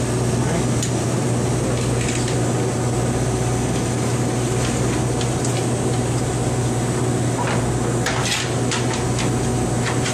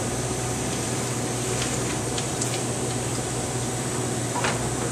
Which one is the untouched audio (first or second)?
first